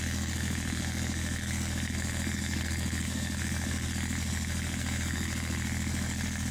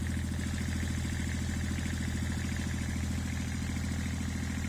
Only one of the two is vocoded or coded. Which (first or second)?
first